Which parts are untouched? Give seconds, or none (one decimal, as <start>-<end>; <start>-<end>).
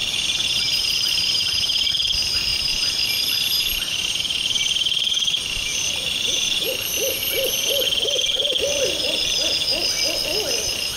1.9-2.5; 7.7-11.0